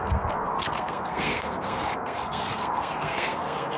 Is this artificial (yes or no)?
yes